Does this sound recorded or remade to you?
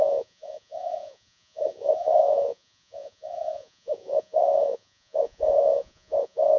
remade